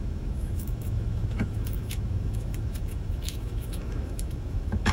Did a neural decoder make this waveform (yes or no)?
yes